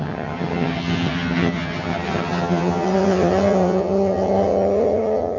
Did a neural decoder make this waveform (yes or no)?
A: yes